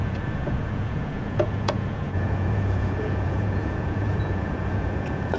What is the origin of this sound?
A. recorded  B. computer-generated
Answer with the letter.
B